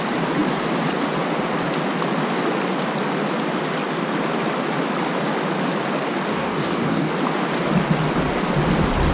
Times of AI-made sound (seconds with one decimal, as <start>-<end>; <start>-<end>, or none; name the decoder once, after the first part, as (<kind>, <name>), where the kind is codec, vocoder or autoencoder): 6.3-7.1 (codec, DAC)